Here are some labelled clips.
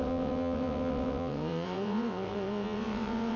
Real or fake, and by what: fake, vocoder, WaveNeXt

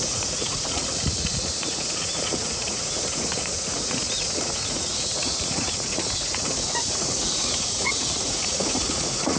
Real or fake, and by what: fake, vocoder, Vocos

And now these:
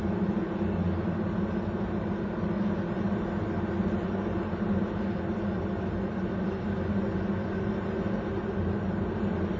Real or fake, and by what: real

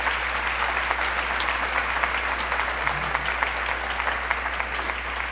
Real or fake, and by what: real